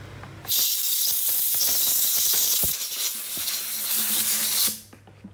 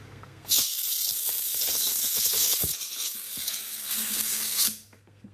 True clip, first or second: first